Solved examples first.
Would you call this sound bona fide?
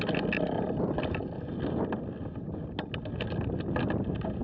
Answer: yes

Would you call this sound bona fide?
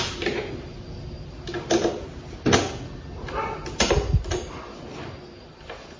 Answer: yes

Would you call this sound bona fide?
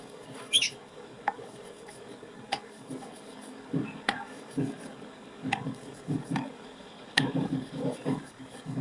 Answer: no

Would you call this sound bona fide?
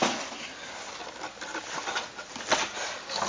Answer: yes